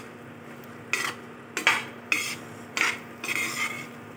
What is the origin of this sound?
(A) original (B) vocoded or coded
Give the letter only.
A